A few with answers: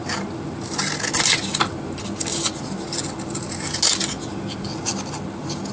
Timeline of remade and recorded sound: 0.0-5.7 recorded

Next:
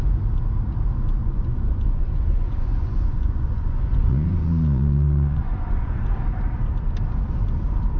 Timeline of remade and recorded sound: 0.0-1.2 recorded; 1.2-6.0 remade; 6.0-8.0 recorded

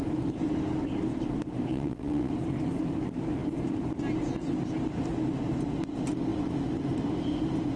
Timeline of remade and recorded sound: 0.0-1.7 recorded; 1.7-2.3 remade; 2.3-7.8 recorded

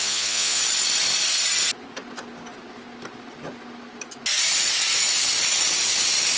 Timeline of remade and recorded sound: 0.0-0.6 remade; 0.6-6.4 recorded

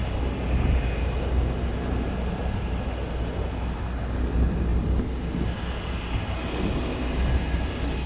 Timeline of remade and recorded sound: 0.0-8.1 recorded

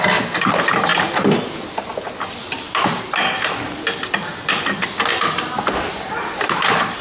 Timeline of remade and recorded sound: 0.0-7.0 recorded